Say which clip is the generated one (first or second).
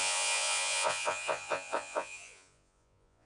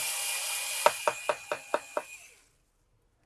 first